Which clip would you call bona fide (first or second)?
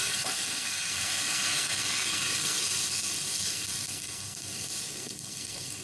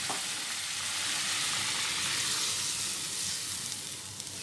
second